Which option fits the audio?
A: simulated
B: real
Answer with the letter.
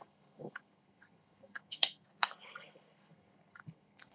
A